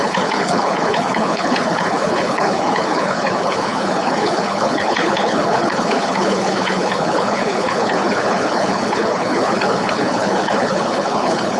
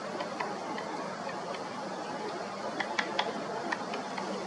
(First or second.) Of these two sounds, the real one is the second